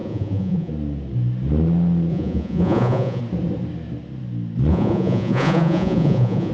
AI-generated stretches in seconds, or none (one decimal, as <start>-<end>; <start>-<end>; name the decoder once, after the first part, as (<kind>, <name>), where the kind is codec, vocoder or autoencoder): 0.0-0.7 (vocoder, Vocos); 2.1-3.2; 4.7-6.5